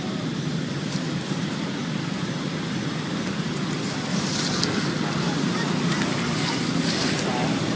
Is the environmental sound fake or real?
real